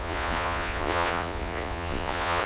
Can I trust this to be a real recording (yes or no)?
no